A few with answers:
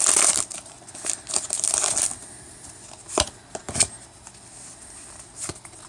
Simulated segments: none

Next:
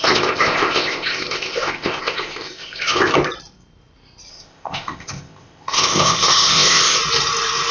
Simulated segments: 0.0-3.1; 4.3-7.0

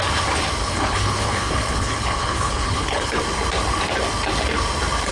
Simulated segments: 0.6-3.2

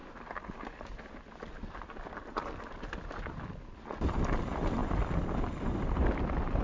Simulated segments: none

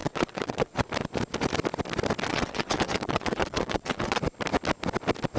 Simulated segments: 0.0-0.9; 2.3-4.2

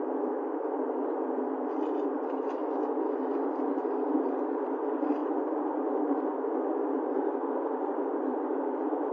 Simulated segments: 0.0-2.6; 3.2-9.1

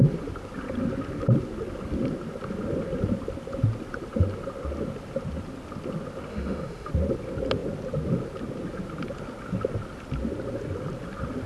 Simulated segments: 6.3-6.9

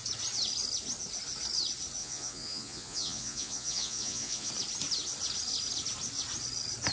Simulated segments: 2.0-4.5